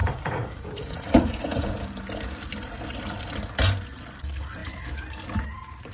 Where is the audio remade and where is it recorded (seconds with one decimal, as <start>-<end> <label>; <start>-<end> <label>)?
0.0-1.7 remade; 1.7-5.9 recorded